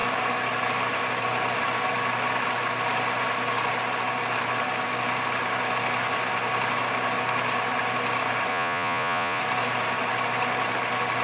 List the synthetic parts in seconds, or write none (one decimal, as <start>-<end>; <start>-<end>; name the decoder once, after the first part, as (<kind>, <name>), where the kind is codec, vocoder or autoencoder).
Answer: 8.5-9.4 (vocoder, Vocos)